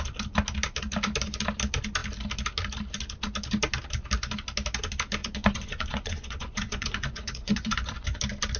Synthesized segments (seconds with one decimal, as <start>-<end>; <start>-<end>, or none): 5.2-8.2

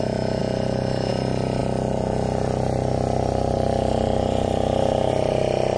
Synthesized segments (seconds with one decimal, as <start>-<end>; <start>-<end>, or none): none